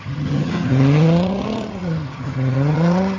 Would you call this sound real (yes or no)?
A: no